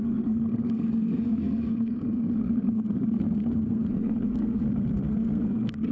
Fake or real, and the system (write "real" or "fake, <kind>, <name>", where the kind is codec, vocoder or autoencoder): fake, codec, SNAC